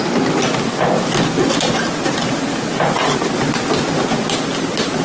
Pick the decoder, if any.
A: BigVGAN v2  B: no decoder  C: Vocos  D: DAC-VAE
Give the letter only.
B